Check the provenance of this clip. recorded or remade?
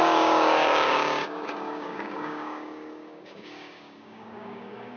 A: remade